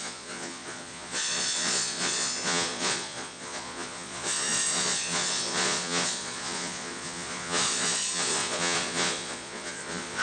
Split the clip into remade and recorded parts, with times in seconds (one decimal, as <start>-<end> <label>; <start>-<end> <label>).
0.0-10.2 remade